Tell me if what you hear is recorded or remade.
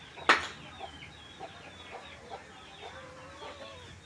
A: recorded